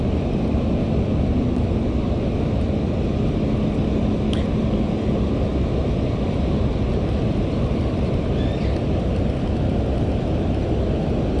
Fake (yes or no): no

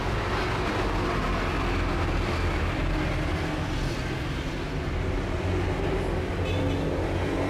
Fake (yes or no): no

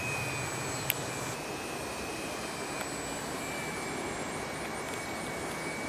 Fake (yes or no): no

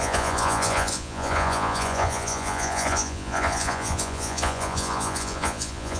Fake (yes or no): yes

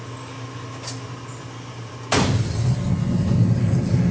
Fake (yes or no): no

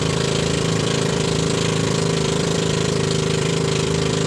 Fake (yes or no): yes